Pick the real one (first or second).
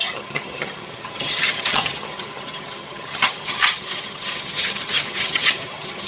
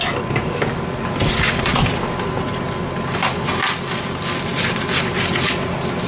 second